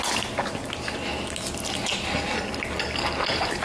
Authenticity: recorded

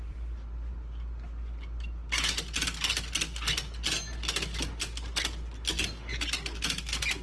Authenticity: recorded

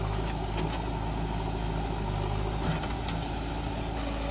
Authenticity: recorded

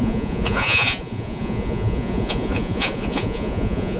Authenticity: remade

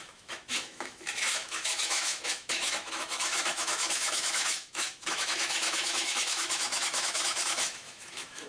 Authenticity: remade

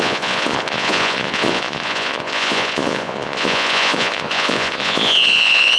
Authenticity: remade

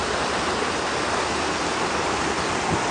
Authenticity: recorded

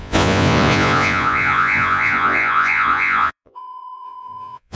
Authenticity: remade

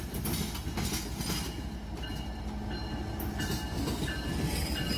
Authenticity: recorded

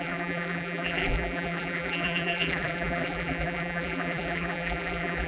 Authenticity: remade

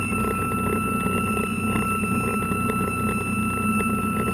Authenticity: recorded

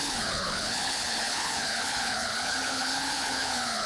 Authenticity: remade